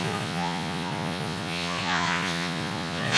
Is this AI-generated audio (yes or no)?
yes